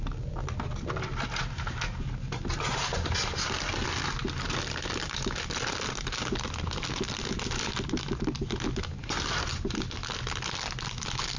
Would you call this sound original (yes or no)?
yes